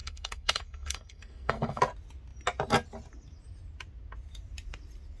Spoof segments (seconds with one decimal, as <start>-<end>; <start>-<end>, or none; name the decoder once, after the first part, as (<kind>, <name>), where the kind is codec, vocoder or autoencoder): 0.0-1.8 (codec, SNAC)